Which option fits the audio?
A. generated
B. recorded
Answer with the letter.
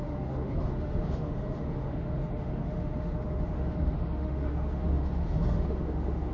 A